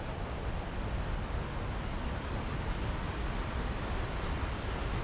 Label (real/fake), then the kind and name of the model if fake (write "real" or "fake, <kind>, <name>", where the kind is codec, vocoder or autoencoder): real